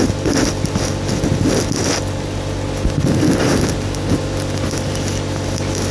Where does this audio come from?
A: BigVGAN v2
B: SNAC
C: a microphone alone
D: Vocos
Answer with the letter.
C